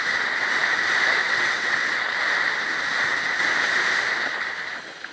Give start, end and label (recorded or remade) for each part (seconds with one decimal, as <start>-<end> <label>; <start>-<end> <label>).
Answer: 0.0-1.2 recorded; 1.2-2.0 remade; 2.0-5.1 recorded